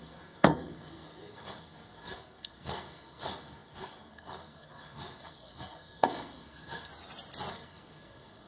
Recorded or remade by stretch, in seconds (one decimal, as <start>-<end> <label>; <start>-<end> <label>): 0.0-6.9 remade; 6.9-7.5 recorded; 7.5-8.5 remade